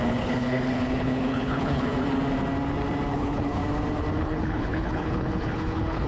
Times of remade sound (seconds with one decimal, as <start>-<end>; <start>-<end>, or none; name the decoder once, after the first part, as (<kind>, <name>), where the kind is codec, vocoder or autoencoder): 0.0-1.9 (codec, HILCodec); 3.1-3.6; 4.2-6.1